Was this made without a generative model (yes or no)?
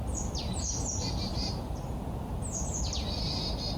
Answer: yes